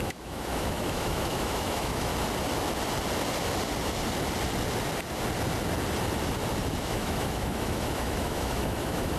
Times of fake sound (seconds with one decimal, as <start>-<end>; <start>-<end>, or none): 0.0-2.1; 6.8-9.2